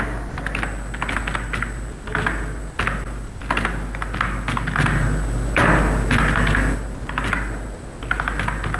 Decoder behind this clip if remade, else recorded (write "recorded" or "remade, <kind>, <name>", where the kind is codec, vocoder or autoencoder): recorded